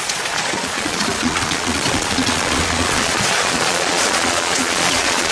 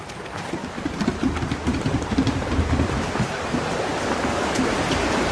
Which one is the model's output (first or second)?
first